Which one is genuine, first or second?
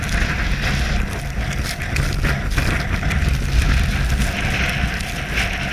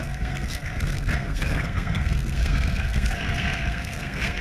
first